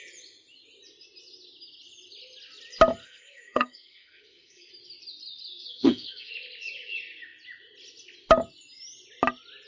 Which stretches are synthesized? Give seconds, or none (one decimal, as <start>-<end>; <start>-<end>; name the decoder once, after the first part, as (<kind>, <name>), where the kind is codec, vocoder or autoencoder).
3.0-4.7 (codec, SNAC); 5.5-6.3

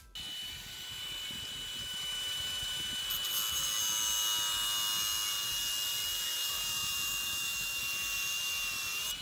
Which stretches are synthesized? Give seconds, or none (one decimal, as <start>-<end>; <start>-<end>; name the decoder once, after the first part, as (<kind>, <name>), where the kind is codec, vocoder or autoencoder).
1.8-3.0 (autoencoder, DAC-VAE); 6.1-7.8

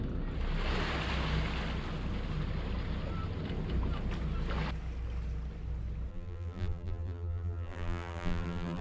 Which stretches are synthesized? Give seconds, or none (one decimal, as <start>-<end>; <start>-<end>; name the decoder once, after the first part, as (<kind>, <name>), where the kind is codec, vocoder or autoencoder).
6.1-8.8 (vocoder, BigVGAN v2)

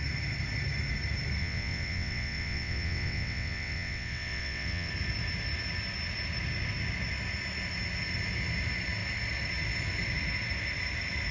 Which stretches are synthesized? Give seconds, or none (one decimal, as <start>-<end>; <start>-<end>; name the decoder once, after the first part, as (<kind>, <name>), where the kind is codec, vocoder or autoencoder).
1.4-4.9 (vocoder, WaveNeXt)

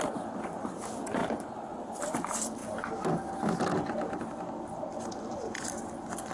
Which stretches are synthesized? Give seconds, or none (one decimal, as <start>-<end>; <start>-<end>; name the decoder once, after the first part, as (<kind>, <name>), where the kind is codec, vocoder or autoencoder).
none